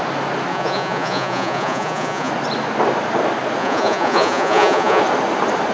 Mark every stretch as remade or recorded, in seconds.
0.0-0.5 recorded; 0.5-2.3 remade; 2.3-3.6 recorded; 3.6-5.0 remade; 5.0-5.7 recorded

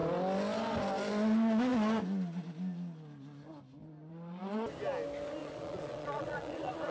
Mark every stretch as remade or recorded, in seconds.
0.0-5.4 recorded; 5.4-6.9 remade

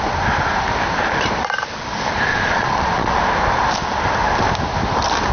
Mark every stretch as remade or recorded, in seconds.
0.0-2.3 recorded; 2.3-3.2 remade; 3.2-5.3 recorded

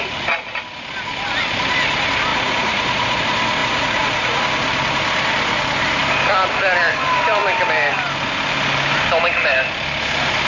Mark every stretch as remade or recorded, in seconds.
0.0-2.3 recorded; 2.3-3.2 remade; 3.2-3.6 recorded; 3.6-4.4 remade; 4.4-10.5 recorded

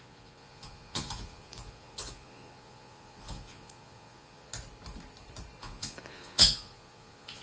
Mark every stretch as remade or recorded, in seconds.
0.0-4.5 remade; 4.5-5.6 recorded; 5.6-7.4 remade

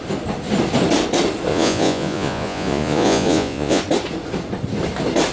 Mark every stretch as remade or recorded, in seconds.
0.0-1.5 recorded; 1.5-3.8 remade; 3.8-5.3 recorded

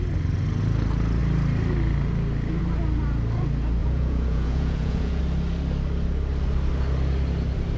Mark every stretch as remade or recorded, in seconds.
0.0-3.8 recorded; 3.8-5.2 remade; 5.2-7.8 recorded